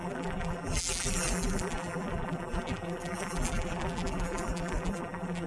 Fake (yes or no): yes